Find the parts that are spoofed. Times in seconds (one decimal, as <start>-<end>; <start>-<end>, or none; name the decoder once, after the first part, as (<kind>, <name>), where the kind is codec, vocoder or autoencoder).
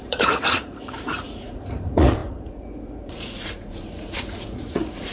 0.0-5.1 (vocoder, Vocos)